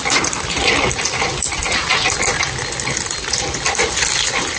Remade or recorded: recorded